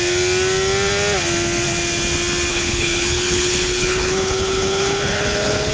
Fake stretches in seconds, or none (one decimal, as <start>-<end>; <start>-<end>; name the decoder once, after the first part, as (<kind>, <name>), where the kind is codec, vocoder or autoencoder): 2.5-5.7 (codec, HILCodec)